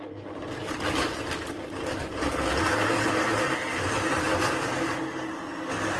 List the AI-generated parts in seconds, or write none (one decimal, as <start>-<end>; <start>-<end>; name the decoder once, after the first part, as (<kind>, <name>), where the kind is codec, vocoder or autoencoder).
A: none